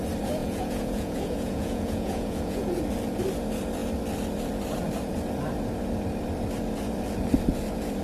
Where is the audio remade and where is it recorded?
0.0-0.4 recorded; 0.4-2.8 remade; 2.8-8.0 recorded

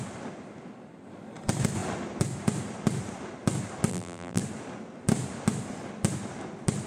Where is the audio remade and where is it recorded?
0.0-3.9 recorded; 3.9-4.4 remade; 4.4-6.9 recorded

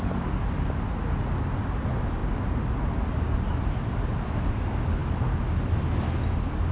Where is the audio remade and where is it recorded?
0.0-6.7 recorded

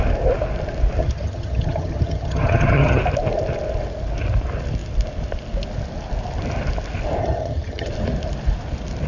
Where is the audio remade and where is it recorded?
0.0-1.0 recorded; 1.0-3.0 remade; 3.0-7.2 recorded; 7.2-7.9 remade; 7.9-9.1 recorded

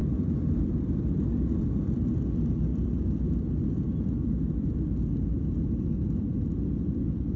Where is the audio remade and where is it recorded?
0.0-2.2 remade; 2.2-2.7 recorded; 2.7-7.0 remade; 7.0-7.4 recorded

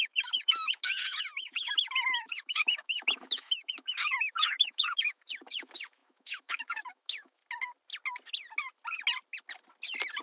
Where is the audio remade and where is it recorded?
0.0-7.4 remade; 7.4-10.2 recorded